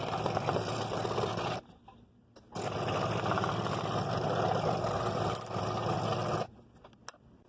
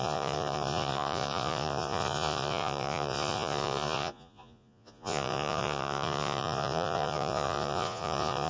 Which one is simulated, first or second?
second